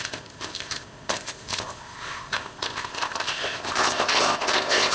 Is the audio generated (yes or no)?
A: yes